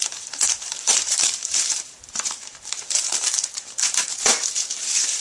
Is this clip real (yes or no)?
no